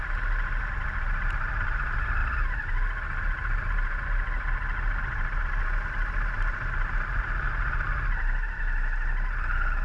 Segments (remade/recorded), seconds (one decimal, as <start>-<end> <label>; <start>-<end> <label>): 0.0-9.8 recorded